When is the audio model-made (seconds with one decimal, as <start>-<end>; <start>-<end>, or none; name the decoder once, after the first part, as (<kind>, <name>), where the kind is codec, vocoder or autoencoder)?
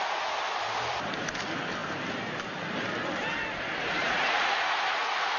4.0-5.4 (vocoder, Vocos)